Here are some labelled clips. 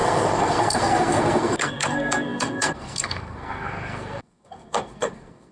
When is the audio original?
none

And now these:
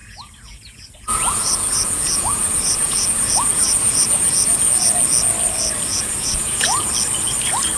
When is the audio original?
4.7-5.9; 6.9-7.8

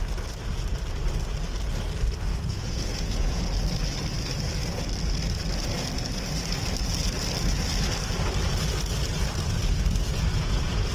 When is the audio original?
0.0-2.3; 3.4-10.1

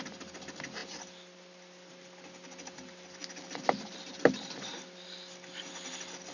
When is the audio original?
0.0-6.3